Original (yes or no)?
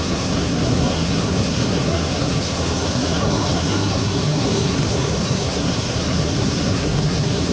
no